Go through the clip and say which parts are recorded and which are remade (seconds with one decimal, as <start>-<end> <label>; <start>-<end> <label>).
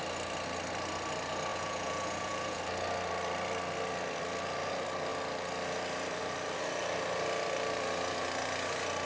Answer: 0.0-1.5 recorded; 1.5-2.6 remade; 2.6-9.1 recorded